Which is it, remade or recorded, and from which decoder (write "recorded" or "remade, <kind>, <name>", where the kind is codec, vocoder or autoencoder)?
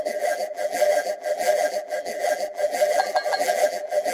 remade, vocoder, BigVGAN v2